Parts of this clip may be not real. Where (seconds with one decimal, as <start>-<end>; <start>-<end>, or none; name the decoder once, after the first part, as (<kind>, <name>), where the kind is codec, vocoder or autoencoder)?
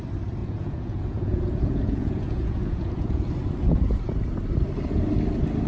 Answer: 0.4-3.3 (vocoder, Vocos)